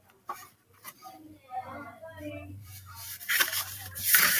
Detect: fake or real fake